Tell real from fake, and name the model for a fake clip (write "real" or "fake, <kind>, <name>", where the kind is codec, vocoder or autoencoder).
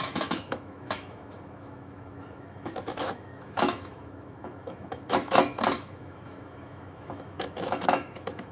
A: fake, autoencoder, DAC-VAE